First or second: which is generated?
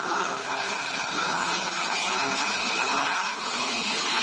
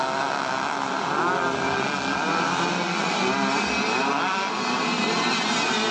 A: first